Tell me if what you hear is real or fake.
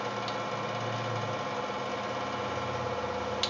real